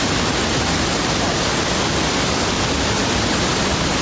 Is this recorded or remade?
recorded